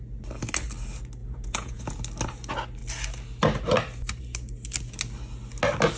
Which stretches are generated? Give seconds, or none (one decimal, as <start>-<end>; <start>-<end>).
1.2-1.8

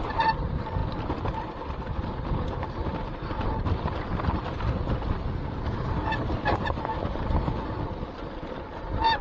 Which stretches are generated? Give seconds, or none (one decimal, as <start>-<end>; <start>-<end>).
none

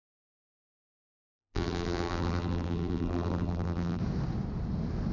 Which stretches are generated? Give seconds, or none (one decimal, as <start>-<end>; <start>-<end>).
0.9-4.0